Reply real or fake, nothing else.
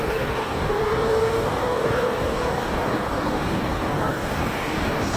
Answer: fake